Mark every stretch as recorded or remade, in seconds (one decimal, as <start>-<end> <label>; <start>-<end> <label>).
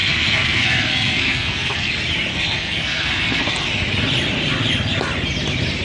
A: 0.0-1.9 remade; 1.9-2.3 recorded; 2.3-3.7 remade; 3.7-5.8 recorded